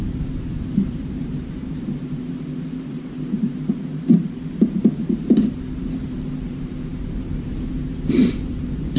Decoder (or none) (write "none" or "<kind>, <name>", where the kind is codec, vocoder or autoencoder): vocoder, BigVGAN v2